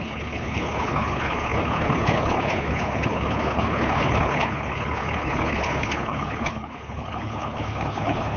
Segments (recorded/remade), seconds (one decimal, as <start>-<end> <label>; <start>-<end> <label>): 0.0-8.4 remade